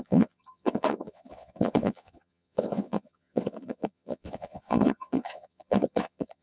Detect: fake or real fake